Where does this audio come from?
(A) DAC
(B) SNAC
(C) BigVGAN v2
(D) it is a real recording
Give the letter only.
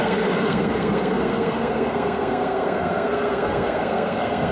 B